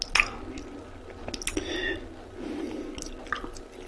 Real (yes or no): yes